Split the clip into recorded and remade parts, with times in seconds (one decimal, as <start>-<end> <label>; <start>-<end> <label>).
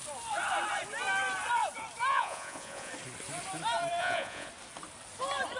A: 0.0-2.1 recorded; 2.1-2.9 remade; 2.9-4.0 recorded; 4.0-4.5 remade; 4.5-5.6 recorded